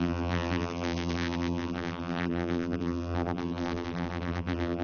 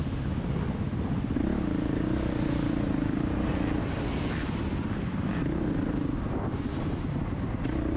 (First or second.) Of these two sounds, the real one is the second